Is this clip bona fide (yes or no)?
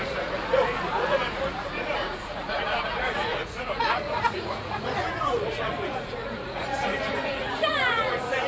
no